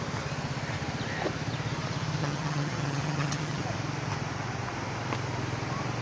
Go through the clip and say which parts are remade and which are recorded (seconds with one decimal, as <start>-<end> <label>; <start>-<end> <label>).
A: 0.0-2.2 recorded; 2.2-3.6 remade; 3.6-6.0 recorded